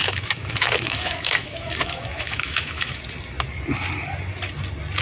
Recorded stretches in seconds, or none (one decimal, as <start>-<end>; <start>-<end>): 3.0-5.0